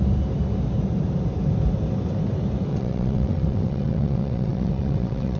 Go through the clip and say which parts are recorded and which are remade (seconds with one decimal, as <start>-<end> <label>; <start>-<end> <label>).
0.0-2.7 recorded; 2.7-5.4 remade